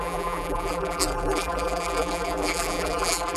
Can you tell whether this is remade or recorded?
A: remade